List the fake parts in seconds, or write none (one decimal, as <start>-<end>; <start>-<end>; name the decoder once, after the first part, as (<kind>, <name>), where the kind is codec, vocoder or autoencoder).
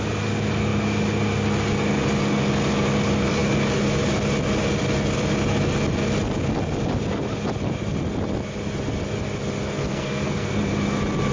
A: 9.8-10.6 (codec, SNAC)